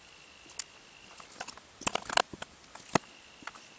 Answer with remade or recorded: recorded